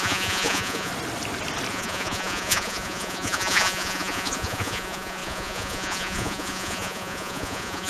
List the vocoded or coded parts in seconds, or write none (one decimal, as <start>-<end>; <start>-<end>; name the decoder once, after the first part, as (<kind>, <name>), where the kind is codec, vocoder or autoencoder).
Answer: 0.0-0.9 (vocoder, Vocos); 1.7-7.9